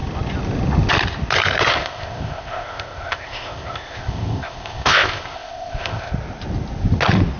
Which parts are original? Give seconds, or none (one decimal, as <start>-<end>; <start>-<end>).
0.0-1.7; 6.1-7.4